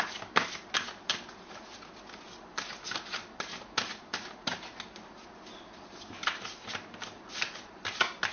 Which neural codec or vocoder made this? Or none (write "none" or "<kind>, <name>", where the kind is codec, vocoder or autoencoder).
none